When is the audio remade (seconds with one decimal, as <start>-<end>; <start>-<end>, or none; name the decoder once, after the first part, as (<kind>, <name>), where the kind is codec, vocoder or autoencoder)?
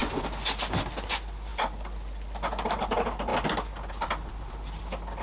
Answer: none